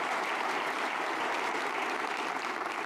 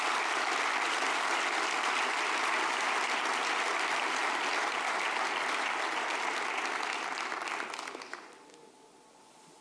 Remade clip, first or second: first